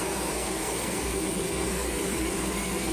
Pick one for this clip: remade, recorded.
remade